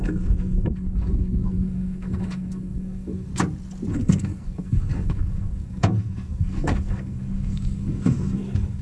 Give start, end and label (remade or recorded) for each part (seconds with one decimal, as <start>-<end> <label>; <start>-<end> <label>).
0.0-3.3 remade; 3.3-3.9 recorded; 3.9-8.8 remade